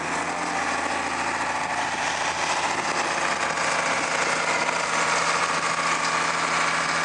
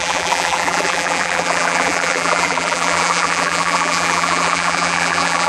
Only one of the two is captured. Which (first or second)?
first